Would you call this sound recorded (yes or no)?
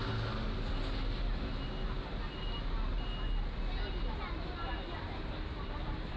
yes